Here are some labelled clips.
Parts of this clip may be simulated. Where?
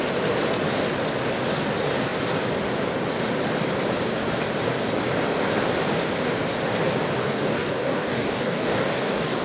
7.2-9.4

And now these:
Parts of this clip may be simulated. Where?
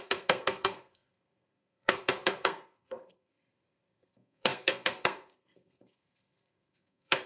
0.0-7.3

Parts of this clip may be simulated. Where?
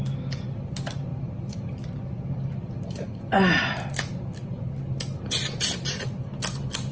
none